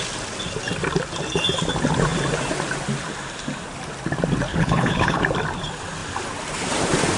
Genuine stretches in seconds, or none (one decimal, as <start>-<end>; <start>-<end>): 0.0-4.5; 5.2-7.2